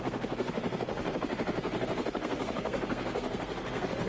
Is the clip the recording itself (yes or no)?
no